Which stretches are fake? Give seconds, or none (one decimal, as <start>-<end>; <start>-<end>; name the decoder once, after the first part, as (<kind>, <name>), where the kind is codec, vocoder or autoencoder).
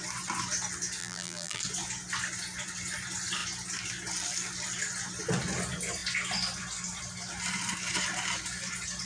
1.0-1.6 (vocoder, BigVGAN v2)